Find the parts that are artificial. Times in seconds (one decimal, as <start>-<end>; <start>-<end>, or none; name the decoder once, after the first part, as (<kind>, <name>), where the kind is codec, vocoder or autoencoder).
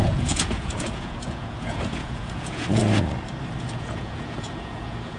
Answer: 0.0-2.8 (vocoder, Vocos); 3.6-5.2